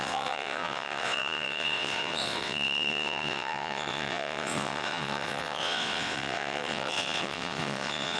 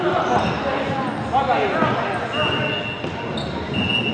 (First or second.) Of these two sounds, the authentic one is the second